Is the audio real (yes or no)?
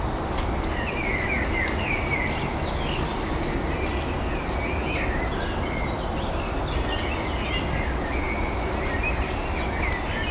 yes